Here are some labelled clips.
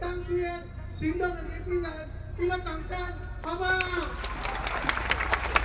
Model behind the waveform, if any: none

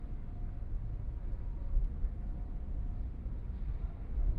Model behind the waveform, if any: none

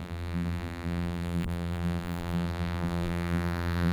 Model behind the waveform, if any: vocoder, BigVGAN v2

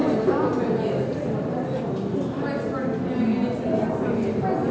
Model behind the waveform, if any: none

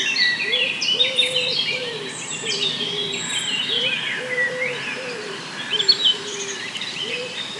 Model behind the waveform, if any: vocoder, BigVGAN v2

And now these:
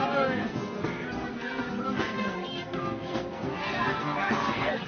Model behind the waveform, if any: codec, SNAC